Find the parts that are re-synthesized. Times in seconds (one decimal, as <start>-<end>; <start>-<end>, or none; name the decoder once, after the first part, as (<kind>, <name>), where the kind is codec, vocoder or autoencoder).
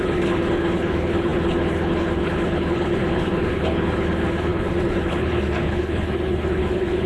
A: 0.0-7.1 (codec, HILCodec)